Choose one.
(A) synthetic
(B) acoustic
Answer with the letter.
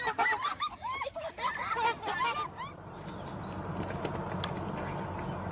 B